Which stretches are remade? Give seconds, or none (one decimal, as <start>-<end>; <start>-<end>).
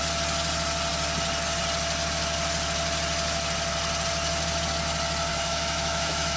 5.3-6.4